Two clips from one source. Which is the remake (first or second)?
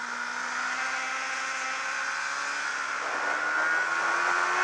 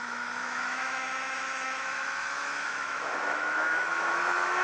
second